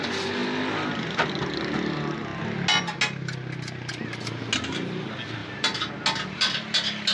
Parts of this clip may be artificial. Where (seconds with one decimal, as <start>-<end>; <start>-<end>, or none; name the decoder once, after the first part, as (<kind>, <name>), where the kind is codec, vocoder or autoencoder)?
5.4-5.9 (vocoder, BigVGAN v2)